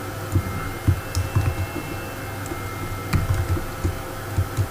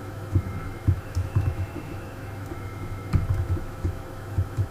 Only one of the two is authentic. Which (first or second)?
first